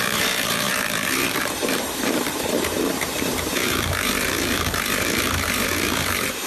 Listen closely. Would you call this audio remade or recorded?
remade